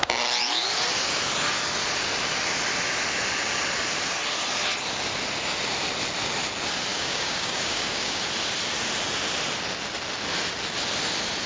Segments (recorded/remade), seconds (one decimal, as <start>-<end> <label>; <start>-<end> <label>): 0.0-6.9 recorded; 6.9-8.2 remade; 8.2-11.5 recorded